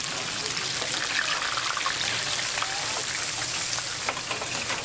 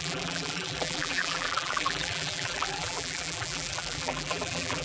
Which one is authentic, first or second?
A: first